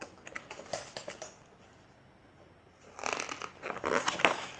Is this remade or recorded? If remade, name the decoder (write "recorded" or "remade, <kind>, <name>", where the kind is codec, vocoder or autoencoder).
recorded